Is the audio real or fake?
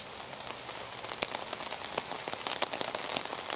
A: real